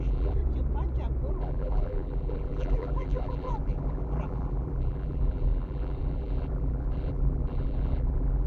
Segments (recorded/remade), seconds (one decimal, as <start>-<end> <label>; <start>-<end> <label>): 0.0-0.4 remade; 0.4-1.3 recorded; 1.3-8.5 remade